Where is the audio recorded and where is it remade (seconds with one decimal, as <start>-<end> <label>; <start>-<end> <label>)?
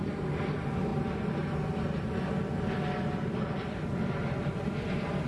0.0-5.3 recorded